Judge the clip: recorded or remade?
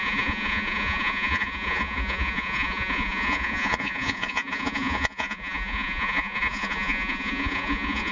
remade